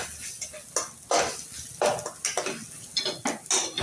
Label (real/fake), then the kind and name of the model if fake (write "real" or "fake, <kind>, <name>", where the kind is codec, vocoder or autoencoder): real